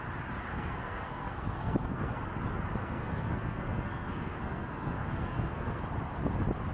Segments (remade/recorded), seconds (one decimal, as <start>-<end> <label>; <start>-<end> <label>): 0.0-0.5 recorded; 0.5-2.2 remade; 2.2-2.8 recorded; 2.8-5.8 remade; 5.8-6.7 recorded